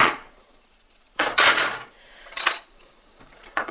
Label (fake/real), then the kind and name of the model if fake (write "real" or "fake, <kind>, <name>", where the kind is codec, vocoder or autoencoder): fake, vocoder, Vocos